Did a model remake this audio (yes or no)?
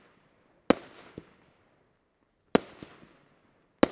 no